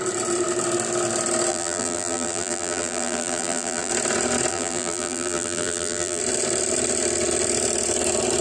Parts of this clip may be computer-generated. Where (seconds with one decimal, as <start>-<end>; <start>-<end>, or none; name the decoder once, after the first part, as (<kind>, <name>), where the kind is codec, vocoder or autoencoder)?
1.5-3.9 (vocoder, BigVGAN v2); 4.5-6.2